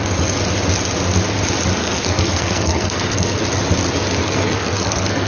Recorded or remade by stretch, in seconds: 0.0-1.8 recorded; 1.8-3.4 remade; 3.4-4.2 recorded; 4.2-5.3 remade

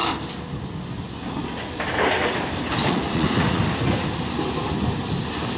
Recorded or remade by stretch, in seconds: 0.0-2.8 recorded; 2.8-3.6 remade; 3.6-5.6 recorded

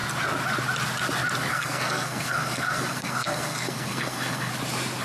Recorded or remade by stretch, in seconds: 0.0-1.5 recorded; 1.5-4.5 remade; 4.5-5.0 recorded

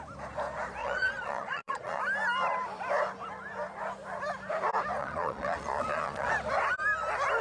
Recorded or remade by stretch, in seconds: 0.0-0.8 recorded; 0.8-2.0 remade; 2.0-5.0 recorded; 5.0-6.3 remade; 6.3-7.4 recorded

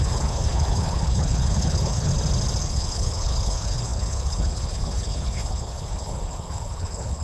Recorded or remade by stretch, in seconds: 0.0-2.1 remade; 2.1-2.6 recorded; 2.6-7.2 remade

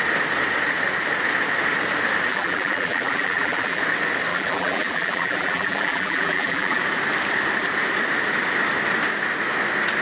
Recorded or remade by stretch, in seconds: 0.0-2.3 recorded; 2.3-3.8 remade; 3.8-4.3 recorded; 4.3-6.8 remade; 6.8-10.0 recorded